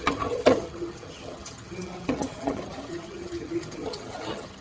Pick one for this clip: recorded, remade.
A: remade